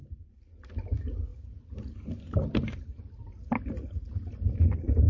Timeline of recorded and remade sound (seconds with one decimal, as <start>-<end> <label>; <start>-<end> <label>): 0.0-5.1 recorded